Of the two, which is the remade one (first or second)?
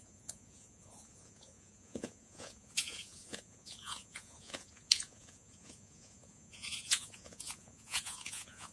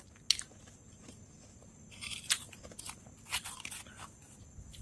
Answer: first